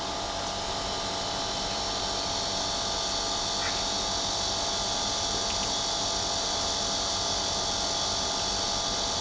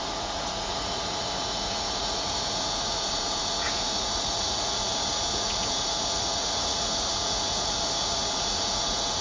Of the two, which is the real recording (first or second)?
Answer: first